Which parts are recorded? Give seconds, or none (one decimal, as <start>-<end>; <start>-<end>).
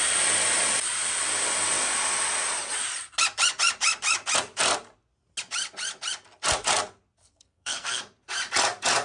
0.0-7.2; 8.0-9.0